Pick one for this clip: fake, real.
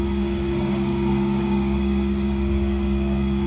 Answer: fake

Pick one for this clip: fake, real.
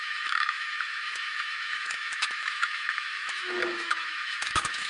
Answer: fake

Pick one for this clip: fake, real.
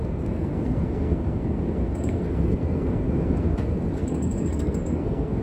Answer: fake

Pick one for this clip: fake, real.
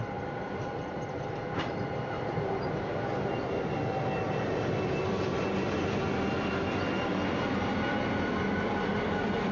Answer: real